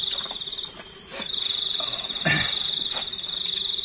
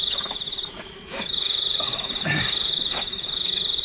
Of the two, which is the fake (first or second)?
second